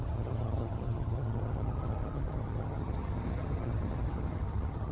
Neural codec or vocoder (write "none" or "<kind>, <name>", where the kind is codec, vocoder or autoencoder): vocoder, HiFi-GAN